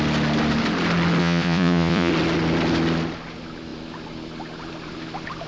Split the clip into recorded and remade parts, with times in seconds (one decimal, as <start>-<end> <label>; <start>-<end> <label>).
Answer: 0.0-1.2 recorded; 1.2-2.1 remade; 2.1-5.5 recorded